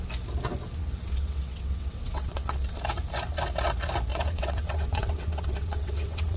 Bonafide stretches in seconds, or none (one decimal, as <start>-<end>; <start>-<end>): 0.0-1.0; 2.8-4.1